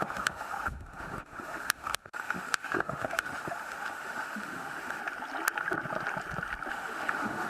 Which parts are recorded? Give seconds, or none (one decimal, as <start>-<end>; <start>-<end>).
5.0-6.7